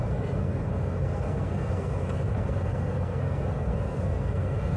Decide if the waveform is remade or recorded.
remade